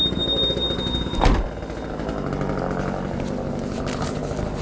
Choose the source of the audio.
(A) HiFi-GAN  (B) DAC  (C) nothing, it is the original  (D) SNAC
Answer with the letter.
C